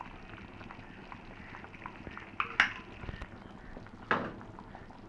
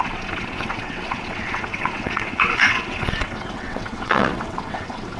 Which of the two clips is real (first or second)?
first